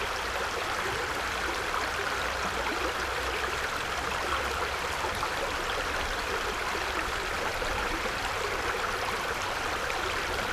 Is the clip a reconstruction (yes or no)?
yes